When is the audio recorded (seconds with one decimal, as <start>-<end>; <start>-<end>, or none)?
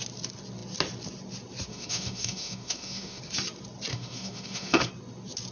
0.0-1.7; 3.2-3.9; 4.9-5.5